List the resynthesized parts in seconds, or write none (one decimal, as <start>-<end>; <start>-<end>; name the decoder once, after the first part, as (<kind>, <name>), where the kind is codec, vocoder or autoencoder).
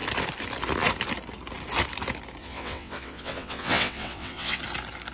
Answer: 2.4-4.6 (vocoder, WaveNeXt)